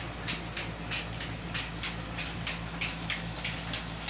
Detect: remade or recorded recorded